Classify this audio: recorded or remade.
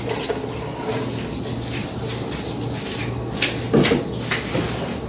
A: recorded